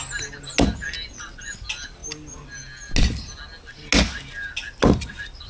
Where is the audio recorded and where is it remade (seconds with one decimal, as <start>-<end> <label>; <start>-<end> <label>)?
0.0-5.5 recorded